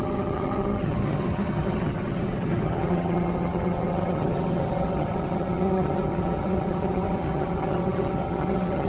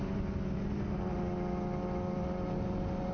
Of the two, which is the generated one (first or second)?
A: first